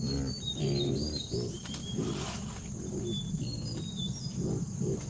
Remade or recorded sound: recorded